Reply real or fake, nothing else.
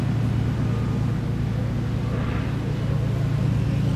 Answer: real